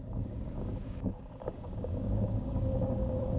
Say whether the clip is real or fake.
fake